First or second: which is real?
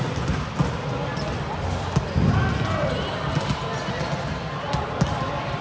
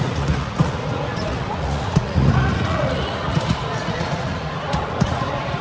first